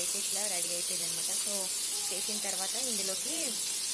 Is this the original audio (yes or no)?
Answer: no